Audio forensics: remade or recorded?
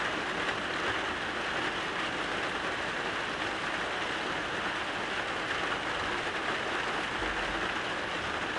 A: recorded